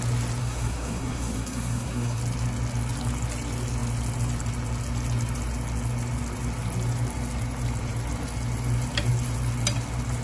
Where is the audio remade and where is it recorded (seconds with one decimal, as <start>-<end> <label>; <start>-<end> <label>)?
0.0-0.4 recorded; 0.4-2.2 remade; 2.2-10.2 recorded